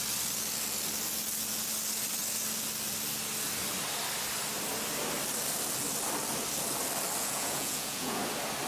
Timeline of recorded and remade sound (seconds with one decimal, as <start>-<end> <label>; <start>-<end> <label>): 0.0-7.2 recorded; 7.2-8.2 remade; 8.2-8.7 recorded